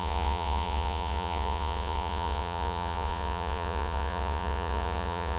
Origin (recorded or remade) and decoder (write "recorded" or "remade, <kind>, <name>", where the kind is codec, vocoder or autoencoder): remade, vocoder, Vocos